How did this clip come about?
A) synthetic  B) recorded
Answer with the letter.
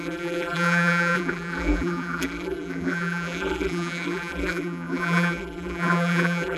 A